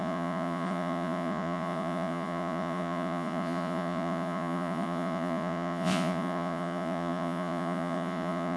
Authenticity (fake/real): fake